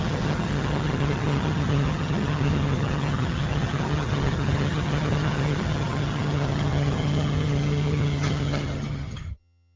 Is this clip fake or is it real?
fake